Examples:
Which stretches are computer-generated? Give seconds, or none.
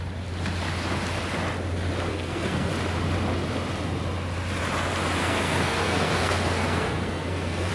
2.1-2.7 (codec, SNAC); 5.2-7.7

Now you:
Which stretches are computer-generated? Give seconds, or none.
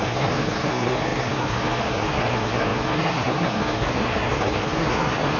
0.0-5.4 (codec, SNAC)